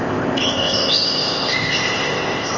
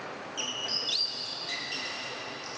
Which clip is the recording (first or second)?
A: second